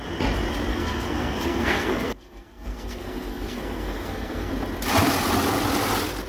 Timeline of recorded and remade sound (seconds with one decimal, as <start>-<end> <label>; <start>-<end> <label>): 0.0-0.7 recorded; 0.7-4.5 remade; 4.5-6.3 recorded

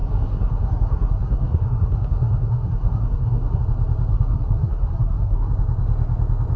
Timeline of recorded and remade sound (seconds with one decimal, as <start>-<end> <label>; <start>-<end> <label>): 0.0-3.6 remade; 3.6-4.1 recorded; 4.1-5.5 remade; 5.5-6.6 recorded

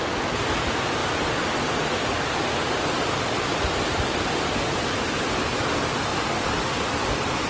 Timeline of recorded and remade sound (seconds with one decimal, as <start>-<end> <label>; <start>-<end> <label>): 0.0-7.5 recorded

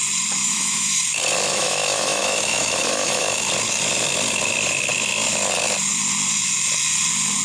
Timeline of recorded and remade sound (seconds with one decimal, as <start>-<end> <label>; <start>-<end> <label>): 0.0-0.4 recorded; 0.4-1.0 remade; 1.0-1.5 recorded; 1.5-3.5 remade; 3.5-7.4 recorded

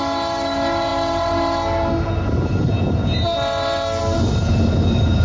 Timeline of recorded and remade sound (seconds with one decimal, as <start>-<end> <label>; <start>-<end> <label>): 0.0-5.2 recorded

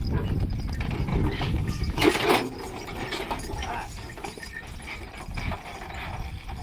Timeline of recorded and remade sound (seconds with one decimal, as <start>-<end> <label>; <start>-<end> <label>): 0.0-1.1 recorded; 1.1-2.1 remade; 2.1-3.6 recorded; 3.6-4.3 remade; 4.3-6.6 recorded